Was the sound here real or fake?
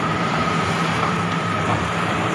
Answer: fake